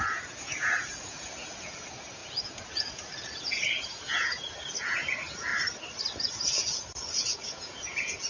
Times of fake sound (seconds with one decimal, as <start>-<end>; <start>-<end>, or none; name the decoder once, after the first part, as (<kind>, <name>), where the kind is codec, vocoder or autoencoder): 0.0-5.5 (vocoder, Vocos); 6.2-8.3

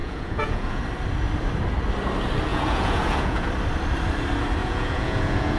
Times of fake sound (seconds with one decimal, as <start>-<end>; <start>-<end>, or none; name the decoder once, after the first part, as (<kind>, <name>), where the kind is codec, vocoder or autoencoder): 0.0-0.8 (vocoder, Vocos); 2.5-3.5; 4.6-5.6